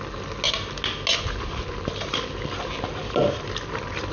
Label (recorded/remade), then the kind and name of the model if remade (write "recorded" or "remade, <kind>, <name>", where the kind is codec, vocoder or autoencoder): recorded